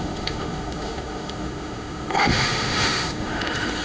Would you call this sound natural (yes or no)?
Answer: no